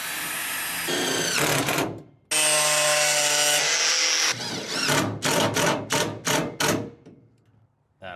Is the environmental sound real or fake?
real